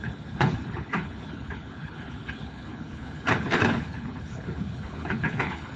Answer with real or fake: fake